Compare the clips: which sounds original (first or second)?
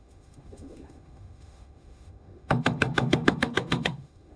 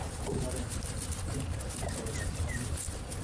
second